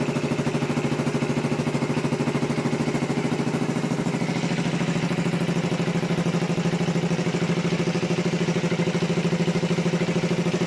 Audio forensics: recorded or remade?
recorded